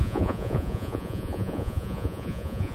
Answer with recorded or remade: remade